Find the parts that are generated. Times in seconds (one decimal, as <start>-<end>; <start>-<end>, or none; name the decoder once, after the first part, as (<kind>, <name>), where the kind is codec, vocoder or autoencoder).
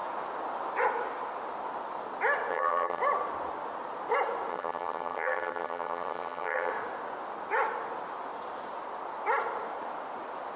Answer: 2.5-3.0 (vocoder, HiFi-GAN); 4.5-6.7